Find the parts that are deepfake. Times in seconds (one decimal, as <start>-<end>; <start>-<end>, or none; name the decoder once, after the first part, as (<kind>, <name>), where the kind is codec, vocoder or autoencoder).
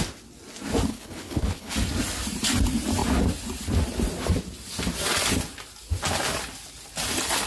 0.9-1.7 (codec, HILCodec)